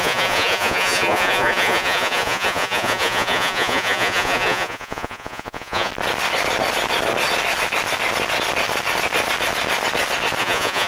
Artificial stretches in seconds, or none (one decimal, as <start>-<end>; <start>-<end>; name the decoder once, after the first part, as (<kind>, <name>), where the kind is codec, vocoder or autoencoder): 0.0-5.9 (vocoder, Vocos); 10.4-10.9